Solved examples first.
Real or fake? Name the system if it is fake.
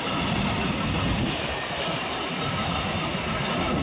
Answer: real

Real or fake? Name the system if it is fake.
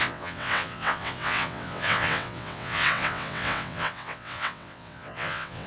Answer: fake, vocoder, WaveNeXt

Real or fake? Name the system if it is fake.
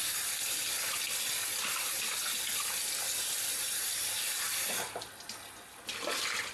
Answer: real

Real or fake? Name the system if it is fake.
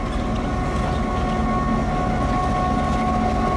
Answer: real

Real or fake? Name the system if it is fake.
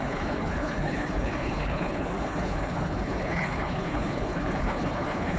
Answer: fake, codec, HILCodec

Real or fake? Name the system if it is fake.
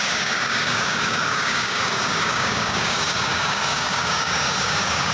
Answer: fake, codec, DAC